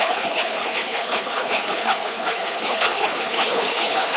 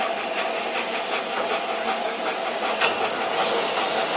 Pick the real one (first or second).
second